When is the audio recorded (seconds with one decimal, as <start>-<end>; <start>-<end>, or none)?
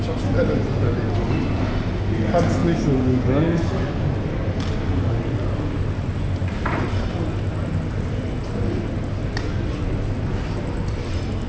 0.0-11.5